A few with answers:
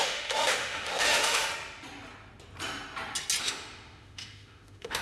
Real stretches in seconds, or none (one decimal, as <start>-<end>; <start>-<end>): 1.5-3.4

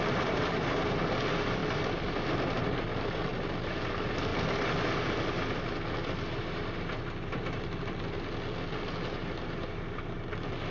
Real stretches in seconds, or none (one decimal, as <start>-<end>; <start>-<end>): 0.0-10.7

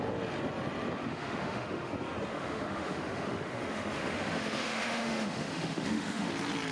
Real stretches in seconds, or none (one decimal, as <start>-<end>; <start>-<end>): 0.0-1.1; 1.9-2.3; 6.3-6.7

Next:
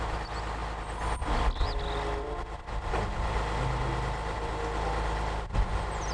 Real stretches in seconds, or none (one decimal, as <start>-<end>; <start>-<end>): 0.0-6.1

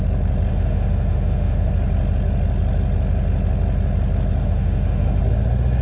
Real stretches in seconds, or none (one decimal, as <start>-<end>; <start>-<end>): 0.0-0.5; 1.7-4.4; 5.2-5.8